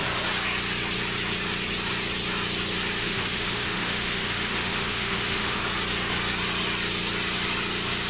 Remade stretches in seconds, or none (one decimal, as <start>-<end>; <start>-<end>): 3.0-5.6